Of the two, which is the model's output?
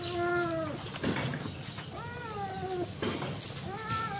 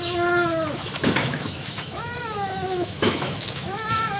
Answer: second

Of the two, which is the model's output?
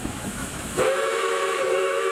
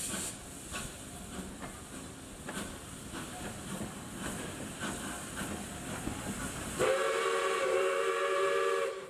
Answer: first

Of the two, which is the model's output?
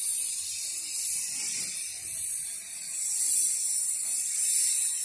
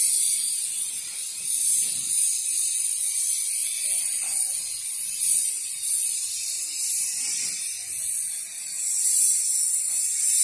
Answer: first